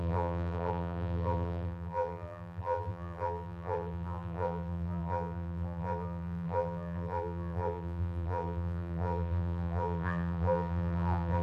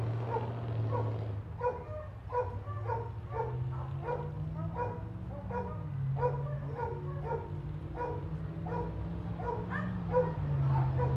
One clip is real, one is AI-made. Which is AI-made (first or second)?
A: first